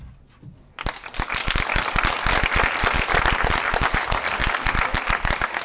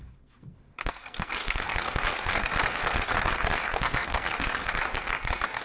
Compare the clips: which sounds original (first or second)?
first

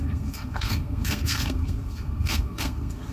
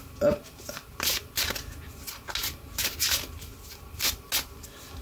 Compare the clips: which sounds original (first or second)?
second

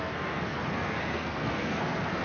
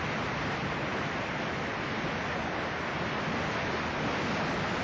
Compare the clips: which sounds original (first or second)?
second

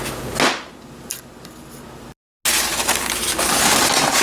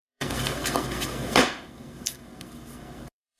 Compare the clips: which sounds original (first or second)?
first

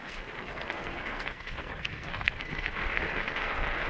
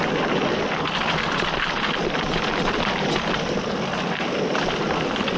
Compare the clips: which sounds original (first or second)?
second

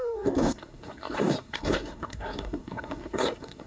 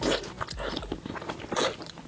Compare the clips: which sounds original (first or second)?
second